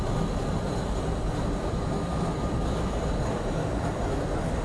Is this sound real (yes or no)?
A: yes